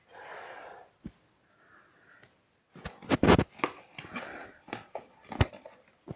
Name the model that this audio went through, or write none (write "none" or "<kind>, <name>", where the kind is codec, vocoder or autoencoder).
none